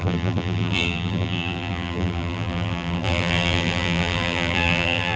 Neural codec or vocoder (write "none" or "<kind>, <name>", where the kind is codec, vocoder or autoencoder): vocoder, BigVGAN v2